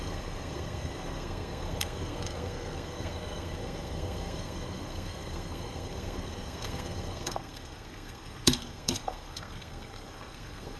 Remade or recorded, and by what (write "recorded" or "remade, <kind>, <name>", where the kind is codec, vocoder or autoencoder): remade, codec, SNAC